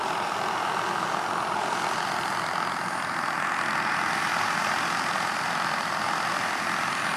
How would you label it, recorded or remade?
recorded